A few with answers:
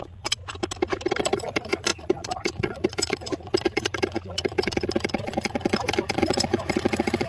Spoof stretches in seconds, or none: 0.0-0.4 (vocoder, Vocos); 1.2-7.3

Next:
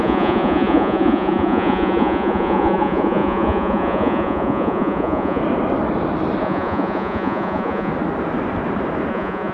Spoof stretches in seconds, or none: 0.0-5.4 (vocoder, Vocos); 6.4-7.9; 9.1-9.5